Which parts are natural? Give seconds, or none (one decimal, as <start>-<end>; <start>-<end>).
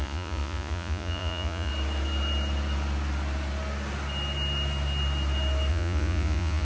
1.7-5.7